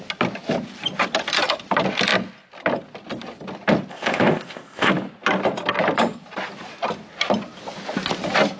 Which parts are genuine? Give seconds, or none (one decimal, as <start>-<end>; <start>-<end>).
0.0-3.9; 4.9-8.6